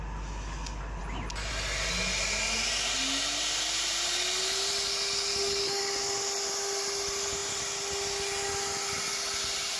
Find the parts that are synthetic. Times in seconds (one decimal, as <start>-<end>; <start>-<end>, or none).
5.3-5.8